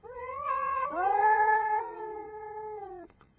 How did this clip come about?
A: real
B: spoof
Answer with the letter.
B